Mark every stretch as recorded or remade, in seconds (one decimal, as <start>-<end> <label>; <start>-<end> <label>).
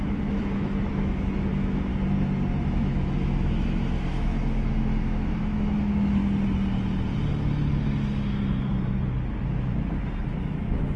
0.0-1.9 remade; 1.9-2.7 recorded; 2.7-6.2 remade; 6.2-10.4 recorded; 10.4-11.0 remade